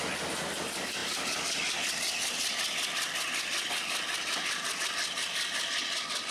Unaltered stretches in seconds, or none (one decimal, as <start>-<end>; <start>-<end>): 0.0-6.3